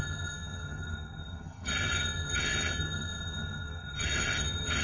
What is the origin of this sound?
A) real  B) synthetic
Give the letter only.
B